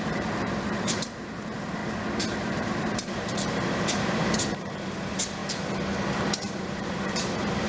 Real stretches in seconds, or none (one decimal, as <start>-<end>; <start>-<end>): 1.8-2.5; 5.4-6.3